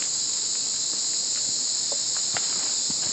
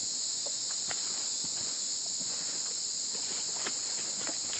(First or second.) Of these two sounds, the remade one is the second